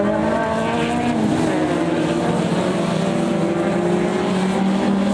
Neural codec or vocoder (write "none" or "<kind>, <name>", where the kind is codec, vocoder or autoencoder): none